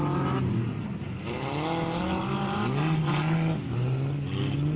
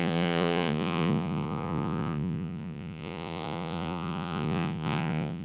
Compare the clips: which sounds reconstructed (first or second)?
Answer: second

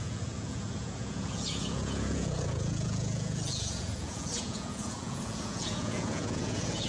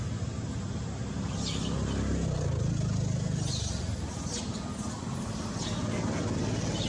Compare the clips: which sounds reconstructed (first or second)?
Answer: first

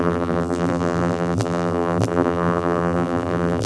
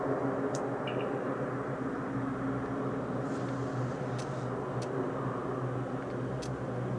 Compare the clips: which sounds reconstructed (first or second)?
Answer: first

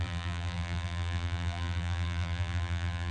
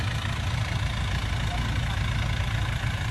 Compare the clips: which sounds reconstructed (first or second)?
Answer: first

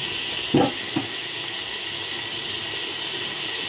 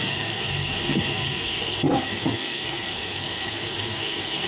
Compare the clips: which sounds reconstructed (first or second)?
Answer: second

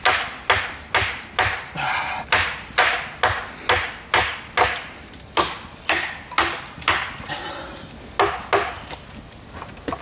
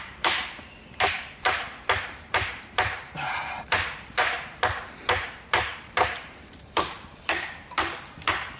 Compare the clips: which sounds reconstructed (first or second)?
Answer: second